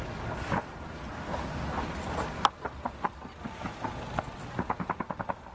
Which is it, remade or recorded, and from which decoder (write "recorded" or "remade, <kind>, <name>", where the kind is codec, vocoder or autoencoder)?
recorded